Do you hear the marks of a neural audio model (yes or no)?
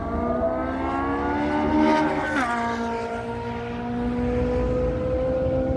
no